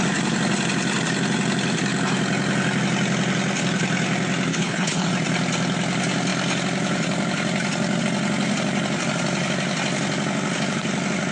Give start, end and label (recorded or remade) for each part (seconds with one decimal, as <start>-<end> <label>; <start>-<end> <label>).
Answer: 0.0-4.5 recorded; 4.5-5.1 remade; 5.1-11.3 recorded